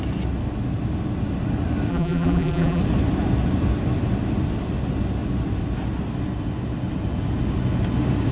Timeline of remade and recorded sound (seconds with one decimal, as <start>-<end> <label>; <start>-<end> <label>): 0.0-1.9 recorded; 1.9-2.8 remade; 2.8-8.3 recorded